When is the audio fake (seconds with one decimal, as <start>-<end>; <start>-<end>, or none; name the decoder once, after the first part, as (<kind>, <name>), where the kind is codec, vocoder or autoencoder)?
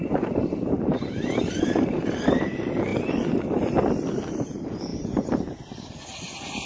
0.0-2.9 (vocoder, BigVGAN v2); 4.1-6.7